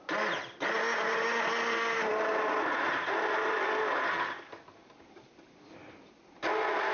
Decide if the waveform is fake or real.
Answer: real